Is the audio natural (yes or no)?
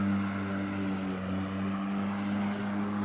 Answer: yes